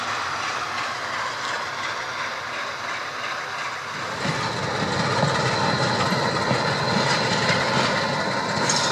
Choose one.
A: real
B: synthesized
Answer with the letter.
A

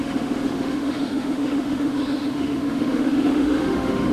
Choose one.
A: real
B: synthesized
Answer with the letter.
B